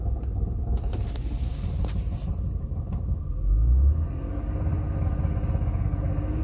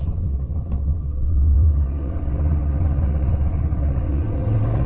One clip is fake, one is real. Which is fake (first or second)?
second